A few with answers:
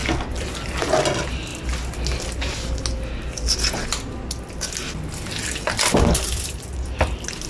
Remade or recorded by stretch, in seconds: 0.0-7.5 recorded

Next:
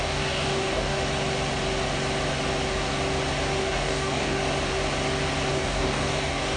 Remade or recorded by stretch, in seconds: 0.0-1.0 remade; 1.0-3.6 recorded; 3.6-4.4 remade; 4.4-5.5 recorded; 5.5-6.6 remade

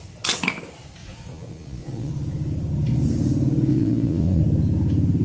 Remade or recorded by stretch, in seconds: 0.0-1.0 recorded; 1.0-2.1 remade; 2.1-3.7 recorded; 3.7-4.4 remade; 4.4-5.2 recorded

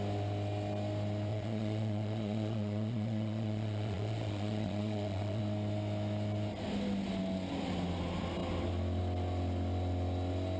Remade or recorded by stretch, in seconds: 0.0-1.3 recorded; 1.3-5.4 remade; 5.4-10.6 recorded

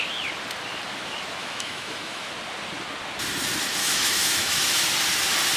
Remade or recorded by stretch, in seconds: 0.0-1.4 recorded; 1.4-2.3 remade; 2.3-3.8 recorded; 3.8-4.8 remade; 4.8-5.6 recorded

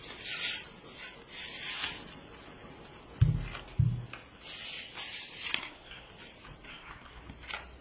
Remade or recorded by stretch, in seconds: 0.0-5.6 recorded; 5.6-6.1 remade; 6.1-6.7 recorded; 6.7-7.2 remade; 7.2-7.8 recorded